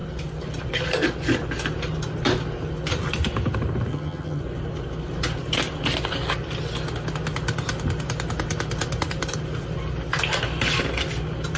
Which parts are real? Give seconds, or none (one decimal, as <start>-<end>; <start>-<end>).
0.0-3.9; 4.4-11.6